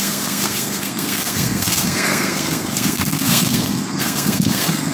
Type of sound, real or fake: fake